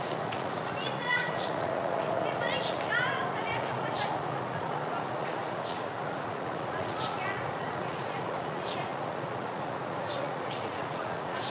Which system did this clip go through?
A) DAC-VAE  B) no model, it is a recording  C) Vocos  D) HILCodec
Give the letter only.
C